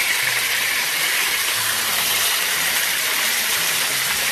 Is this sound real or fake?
fake